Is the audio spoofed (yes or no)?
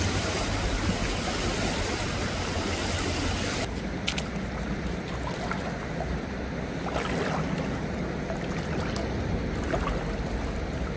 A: no